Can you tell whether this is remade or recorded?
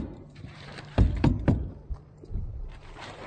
remade